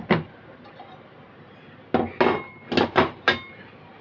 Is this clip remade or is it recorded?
recorded